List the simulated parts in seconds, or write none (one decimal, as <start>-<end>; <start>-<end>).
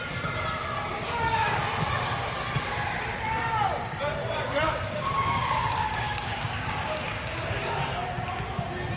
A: 0.9-1.7; 3.9-7.8